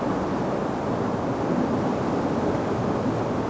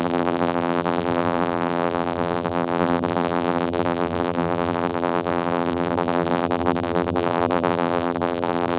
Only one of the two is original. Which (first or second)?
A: first